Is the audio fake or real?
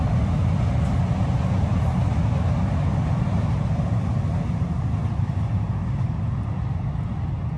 real